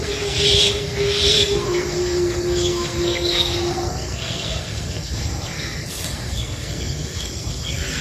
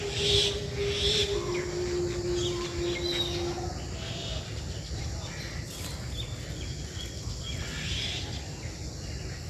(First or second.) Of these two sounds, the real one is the second